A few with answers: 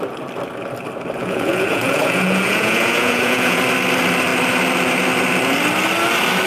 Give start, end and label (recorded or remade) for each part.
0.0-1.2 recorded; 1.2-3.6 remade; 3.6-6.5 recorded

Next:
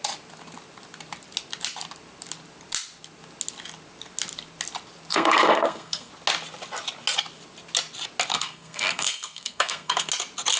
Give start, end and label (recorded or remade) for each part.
0.0-5.1 recorded; 5.1-6.1 remade; 6.1-8.3 recorded; 8.3-10.1 remade; 10.1-10.6 recorded

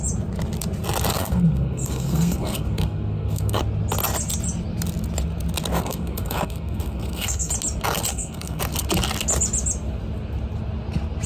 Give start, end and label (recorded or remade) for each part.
0.0-1.1 recorded; 1.1-3.6 remade; 3.6-5.7 recorded; 5.7-7.5 remade; 7.5-8.1 recorded; 8.1-8.6 remade; 8.6-11.3 recorded

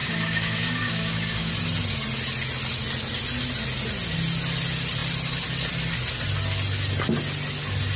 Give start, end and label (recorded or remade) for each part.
0.0-1.5 remade; 1.5-8.0 recorded

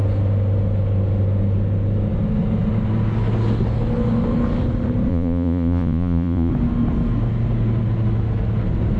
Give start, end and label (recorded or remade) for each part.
0.0-5.1 recorded; 5.1-6.5 remade; 6.5-9.0 recorded

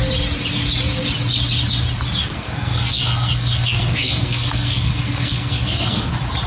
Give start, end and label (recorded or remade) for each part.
0.0-2.2 recorded; 2.2-6.1 remade; 6.1-6.5 recorded